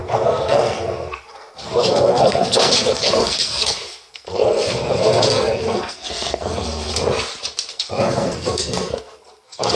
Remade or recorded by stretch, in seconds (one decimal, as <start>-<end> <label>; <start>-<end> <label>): 0.0-6.9 remade; 6.9-7.7 recorded; 7.7-9.8 remade